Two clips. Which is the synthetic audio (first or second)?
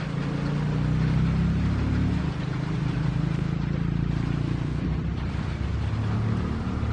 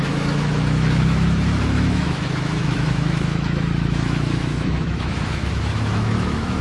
second